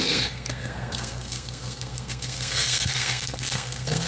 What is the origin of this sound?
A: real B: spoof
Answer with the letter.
B